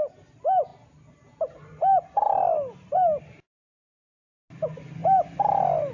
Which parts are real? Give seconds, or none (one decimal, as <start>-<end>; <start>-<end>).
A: 0.0-5.9